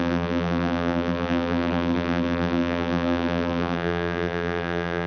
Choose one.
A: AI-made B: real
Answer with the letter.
A